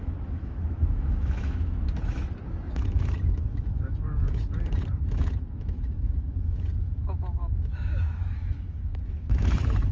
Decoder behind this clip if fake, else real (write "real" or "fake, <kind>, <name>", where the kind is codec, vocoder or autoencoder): fake, autoencoder, DAC-VAE